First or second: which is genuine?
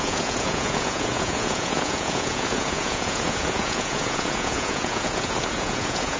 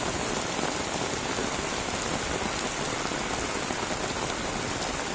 second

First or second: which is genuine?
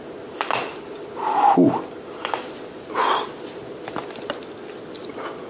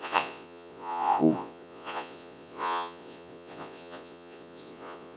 first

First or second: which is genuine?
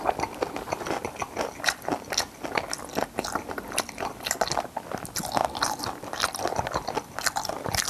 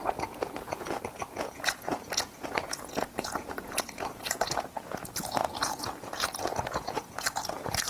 first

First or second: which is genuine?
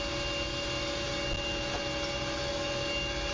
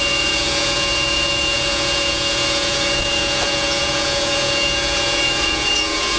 first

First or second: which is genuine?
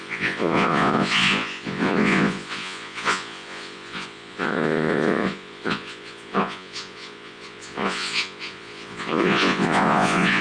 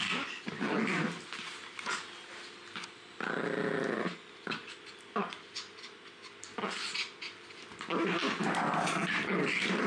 second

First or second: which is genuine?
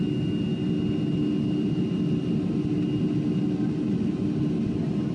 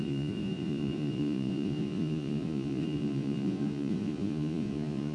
first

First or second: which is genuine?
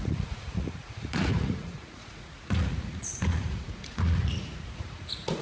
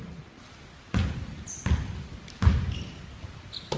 second